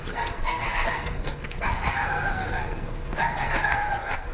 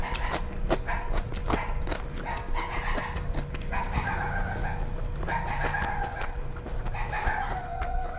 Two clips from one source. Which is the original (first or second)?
second